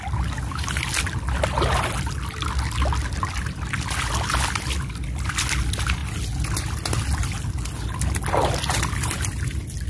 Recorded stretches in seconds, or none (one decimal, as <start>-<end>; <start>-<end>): 0.0-9.9